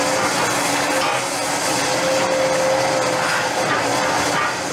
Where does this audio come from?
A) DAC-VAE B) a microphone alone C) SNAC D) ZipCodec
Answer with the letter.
B